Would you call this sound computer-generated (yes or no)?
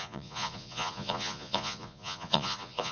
yes